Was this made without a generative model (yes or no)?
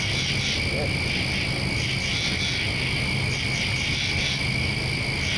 yes